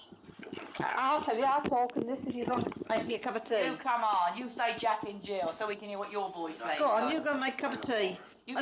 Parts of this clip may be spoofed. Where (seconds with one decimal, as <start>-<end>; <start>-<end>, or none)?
0.0-1.3; 2.2-3.1